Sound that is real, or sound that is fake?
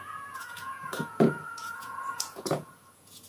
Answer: fake